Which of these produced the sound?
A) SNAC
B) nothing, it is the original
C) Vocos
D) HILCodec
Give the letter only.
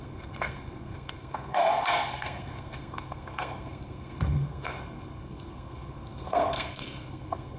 A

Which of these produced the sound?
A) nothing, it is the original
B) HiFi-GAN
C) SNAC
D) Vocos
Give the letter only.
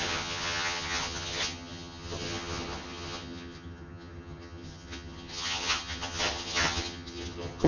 B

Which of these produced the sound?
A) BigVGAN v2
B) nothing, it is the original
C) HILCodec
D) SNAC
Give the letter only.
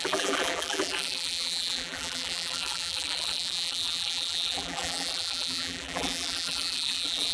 A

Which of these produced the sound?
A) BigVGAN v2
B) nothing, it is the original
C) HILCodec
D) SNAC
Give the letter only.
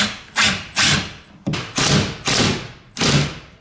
B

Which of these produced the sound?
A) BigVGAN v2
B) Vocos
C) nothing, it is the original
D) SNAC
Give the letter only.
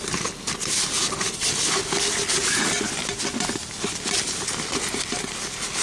C